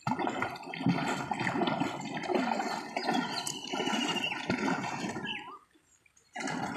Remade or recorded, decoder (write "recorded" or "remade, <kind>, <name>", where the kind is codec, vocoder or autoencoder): recorded